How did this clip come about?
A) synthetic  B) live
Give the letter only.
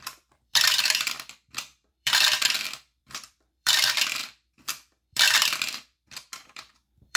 A